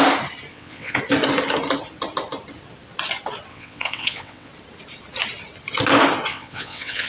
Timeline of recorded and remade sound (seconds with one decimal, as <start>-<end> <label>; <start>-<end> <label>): 0.0-0.5 recorded; 0.5-1.0 remade; 1.0-3.5 recorded; 3.5-4.5 remade; 4.5-6.3 recorded; 6.3-7.1 remade